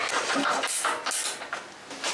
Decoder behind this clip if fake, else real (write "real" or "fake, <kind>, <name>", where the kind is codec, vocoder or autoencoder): real